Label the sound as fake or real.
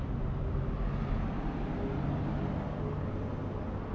real